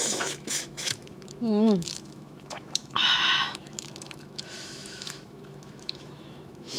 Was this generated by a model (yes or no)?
yes